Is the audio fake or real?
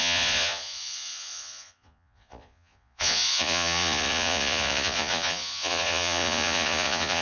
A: fake